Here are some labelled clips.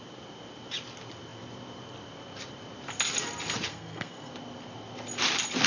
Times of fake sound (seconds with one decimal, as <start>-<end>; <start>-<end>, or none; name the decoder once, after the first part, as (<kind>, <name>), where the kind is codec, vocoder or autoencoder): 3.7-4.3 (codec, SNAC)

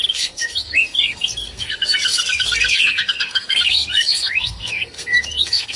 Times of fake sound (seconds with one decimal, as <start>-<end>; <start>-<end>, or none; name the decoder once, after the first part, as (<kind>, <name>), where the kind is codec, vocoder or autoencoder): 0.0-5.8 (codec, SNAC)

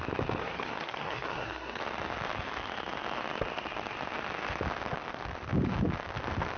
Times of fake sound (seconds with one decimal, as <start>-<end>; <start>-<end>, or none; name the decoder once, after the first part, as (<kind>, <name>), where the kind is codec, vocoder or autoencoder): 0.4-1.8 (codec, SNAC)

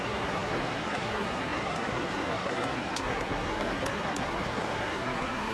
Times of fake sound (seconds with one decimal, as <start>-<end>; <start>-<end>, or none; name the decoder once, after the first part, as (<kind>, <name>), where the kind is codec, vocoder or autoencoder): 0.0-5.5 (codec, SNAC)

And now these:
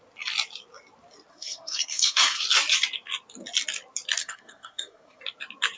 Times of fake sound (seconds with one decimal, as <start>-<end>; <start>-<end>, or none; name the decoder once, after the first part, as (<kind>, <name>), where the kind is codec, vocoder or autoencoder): 1.3-2.4 (codec, SNAC); 4.2-5.2